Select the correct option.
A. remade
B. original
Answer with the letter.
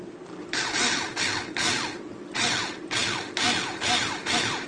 B